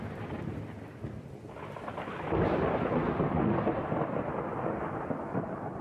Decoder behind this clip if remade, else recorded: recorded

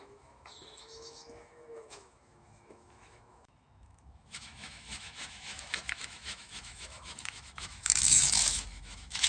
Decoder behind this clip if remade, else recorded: remade, autoencoder, DAC-VAE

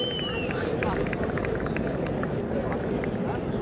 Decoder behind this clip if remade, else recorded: remade, vocoder, BigVGAN v2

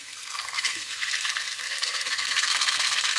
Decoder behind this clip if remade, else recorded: remade, codec, SNAC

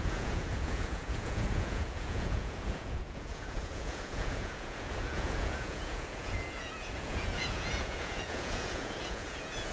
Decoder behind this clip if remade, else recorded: remade, vocoder, Vocos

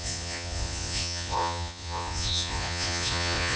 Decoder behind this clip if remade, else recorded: remade, vocoder, Vocos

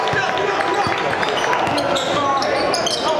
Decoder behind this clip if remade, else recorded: recorded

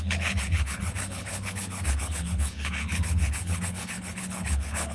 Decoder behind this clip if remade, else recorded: remade, codec, HILCodec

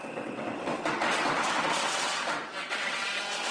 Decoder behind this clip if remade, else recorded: remade, vocoder, WaveNeXt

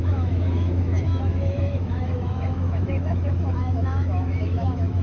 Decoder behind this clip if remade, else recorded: remade, autoencoder, DAC-VAE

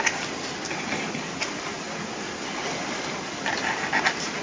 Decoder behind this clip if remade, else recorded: recorded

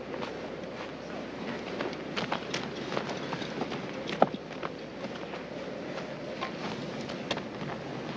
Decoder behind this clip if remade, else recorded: recorded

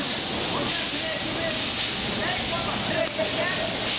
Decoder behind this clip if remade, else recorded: recorded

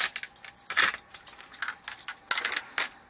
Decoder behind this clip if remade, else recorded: recorded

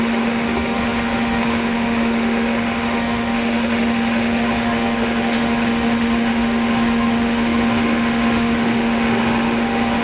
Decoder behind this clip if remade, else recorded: remade, autoencoder, DAC-VAE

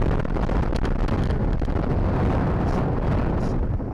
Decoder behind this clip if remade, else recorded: recorded